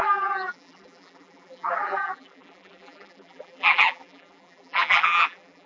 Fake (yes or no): yes